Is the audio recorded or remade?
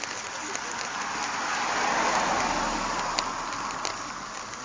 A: recorded